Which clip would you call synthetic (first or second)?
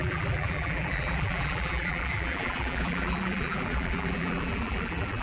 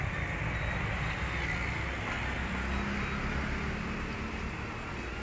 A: first